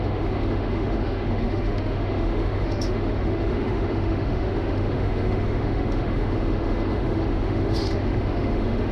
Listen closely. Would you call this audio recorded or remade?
remade